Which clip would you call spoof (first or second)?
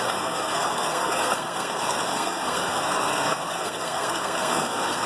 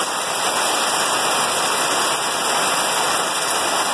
first